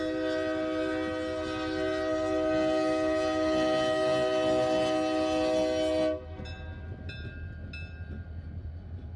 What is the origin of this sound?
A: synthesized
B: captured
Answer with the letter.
B